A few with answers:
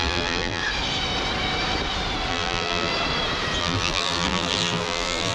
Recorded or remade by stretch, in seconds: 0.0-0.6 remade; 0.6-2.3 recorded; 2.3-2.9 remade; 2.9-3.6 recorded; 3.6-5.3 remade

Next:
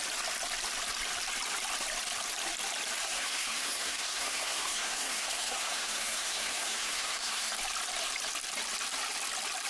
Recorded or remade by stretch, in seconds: 0.0-3.0 recorded; 3.0-7.5 remade; 7.5-9.7 recorded

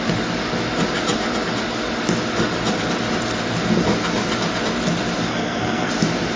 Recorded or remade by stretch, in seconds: 0.0-5.3 recorded; 5.3-5.9 remade; 5.9-6.4 recorded

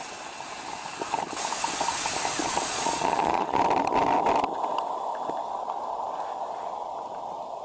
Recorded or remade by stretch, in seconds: 0.0-2.4 recorded; 2.4-3.6 remade; 3.6-7.6 recorded

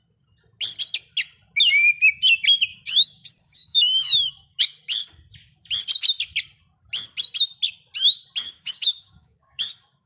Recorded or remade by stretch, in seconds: 0.0-2.7 recorded; 2.7-4.6 remade; 4.6-8.4 recorded; 8.4-9.7 remade; 9.7-10.1 recorded

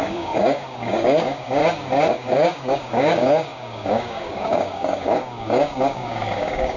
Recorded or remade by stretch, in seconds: 0.0-1.6 remade; 1.6-2.1 recorded; 2.1-6.8 remade

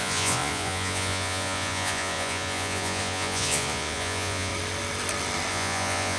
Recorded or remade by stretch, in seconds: 0.0-4.5 remade; 4.5-5.5 recorded; 5.5-6.2 remade